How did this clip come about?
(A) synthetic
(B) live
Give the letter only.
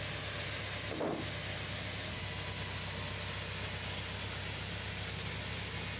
B